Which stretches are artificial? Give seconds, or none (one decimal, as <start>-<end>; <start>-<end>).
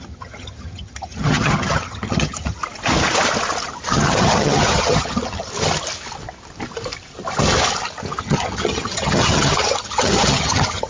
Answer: 0.0-2.6; 3.9-5.5; 8.2-10.9